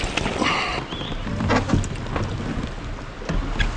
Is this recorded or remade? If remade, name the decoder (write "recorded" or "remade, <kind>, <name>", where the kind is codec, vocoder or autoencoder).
recorded